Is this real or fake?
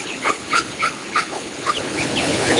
fake